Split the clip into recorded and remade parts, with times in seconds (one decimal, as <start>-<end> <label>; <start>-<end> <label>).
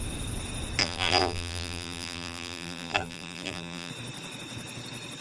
0.0-0.8 recorded; 0.8-3.9 remade; 3.9-5.2 recorded